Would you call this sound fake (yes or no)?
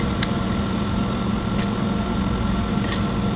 no